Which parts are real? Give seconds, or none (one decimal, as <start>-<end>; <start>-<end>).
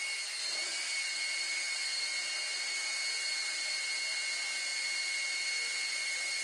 0.0-6.4